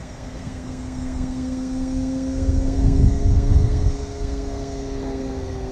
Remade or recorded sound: remade